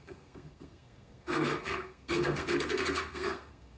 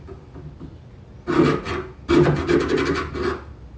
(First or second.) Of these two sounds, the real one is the second